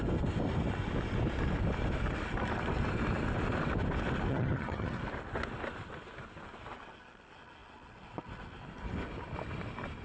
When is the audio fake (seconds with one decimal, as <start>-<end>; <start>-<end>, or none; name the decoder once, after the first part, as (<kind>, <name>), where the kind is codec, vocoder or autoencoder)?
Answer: 4.3-5.0 (vocoder, HiFi-GAN)